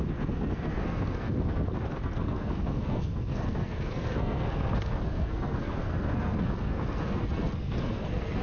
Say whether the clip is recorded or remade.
remade